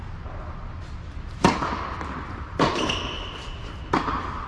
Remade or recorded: recorded